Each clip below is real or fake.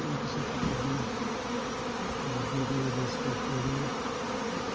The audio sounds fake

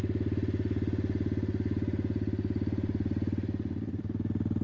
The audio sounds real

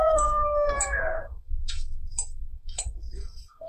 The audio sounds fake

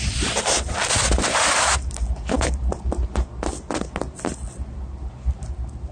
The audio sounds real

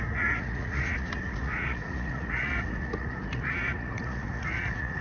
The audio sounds fake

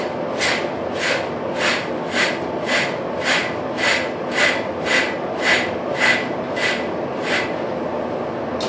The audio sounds real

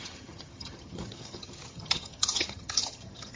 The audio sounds fake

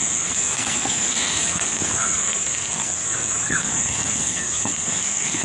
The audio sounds fake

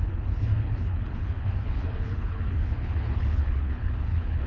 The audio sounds fake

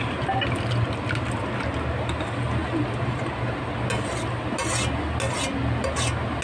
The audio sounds real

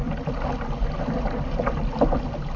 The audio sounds real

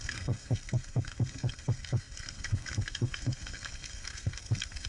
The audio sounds fake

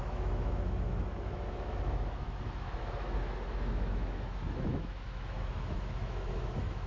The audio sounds fake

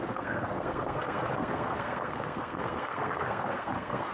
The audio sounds fake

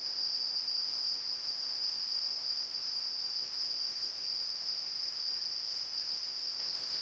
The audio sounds fake